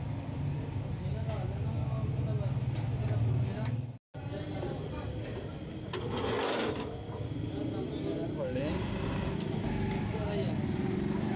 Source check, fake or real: real